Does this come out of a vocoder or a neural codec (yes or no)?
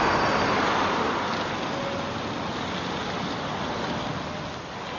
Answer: no